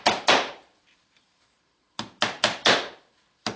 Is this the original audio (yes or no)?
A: no